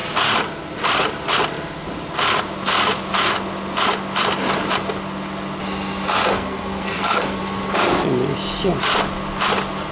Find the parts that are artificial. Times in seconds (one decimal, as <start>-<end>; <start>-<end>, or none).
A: 6.3-7.4